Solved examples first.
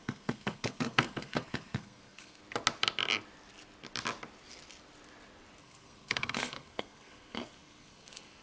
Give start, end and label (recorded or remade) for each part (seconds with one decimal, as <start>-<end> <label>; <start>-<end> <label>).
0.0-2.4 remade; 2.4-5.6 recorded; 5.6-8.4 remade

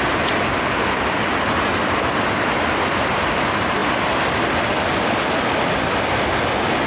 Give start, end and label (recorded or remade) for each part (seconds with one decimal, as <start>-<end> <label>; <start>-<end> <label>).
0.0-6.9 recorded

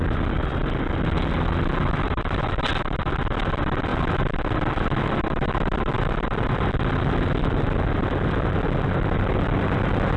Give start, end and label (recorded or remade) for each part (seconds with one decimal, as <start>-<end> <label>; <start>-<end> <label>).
0.0-10.2 recorded

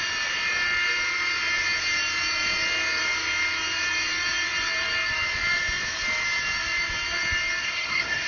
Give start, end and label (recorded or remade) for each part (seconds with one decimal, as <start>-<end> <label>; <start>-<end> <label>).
0.0-7.6 recorded; 7.6-8.3 remade

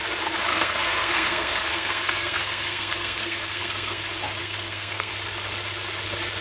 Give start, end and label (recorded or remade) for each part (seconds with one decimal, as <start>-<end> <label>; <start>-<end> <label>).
0.0-0.5 recorded; 0.5-4.0 remade; 4.0-4.4 recorded; 4.4-5.1 remade; 5.1-6.4 recorded

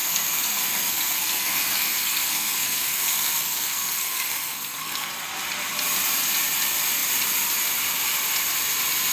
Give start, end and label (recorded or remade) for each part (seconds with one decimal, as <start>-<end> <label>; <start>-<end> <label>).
0.0-5.1 remade; 5.1-9.1 recorded